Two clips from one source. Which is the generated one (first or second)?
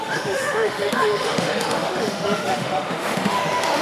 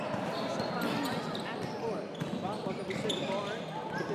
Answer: first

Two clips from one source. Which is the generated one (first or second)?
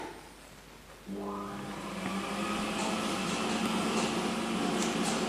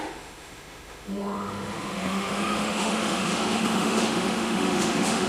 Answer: second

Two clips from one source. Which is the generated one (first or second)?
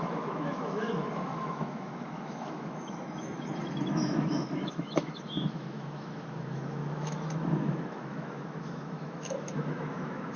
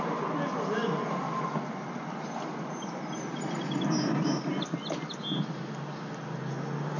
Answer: first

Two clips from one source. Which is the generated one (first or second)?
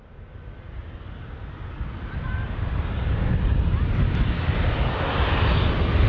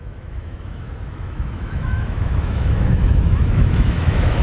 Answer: second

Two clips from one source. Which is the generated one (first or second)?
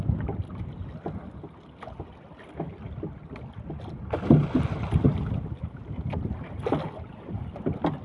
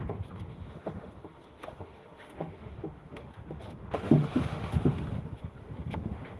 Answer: second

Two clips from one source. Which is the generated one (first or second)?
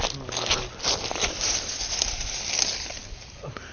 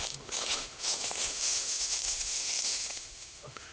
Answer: second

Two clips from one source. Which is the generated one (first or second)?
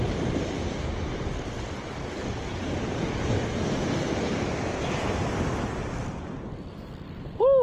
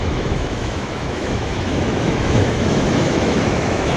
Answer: second